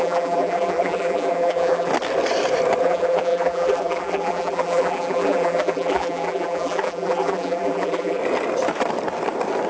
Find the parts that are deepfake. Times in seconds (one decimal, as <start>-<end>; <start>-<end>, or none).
0.0-1.9; 2.8-8.2